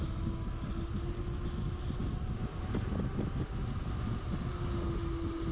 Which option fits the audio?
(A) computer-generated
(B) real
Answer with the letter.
B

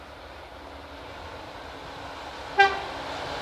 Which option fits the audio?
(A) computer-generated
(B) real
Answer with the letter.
B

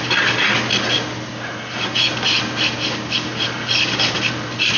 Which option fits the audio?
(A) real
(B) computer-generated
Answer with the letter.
A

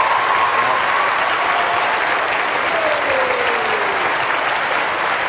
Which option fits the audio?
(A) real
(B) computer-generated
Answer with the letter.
A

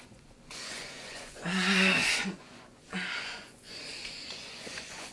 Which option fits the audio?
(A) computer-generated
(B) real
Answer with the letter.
A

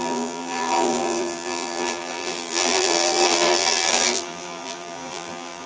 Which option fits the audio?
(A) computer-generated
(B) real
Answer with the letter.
A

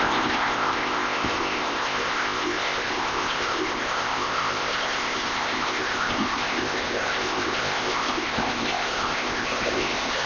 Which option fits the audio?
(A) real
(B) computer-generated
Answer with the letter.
B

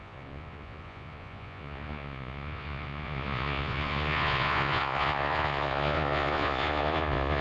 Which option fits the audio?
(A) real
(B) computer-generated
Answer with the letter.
B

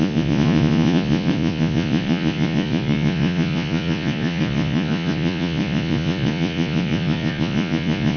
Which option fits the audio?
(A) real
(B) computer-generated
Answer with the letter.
B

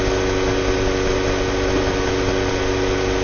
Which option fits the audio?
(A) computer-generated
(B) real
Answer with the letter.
B